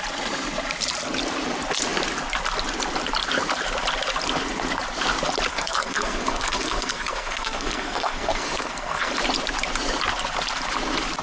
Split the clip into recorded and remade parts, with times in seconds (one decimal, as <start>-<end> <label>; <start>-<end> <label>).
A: 0.0-5.5 recorded; 5.5-9.1 remade; 9.1-11.2 recorded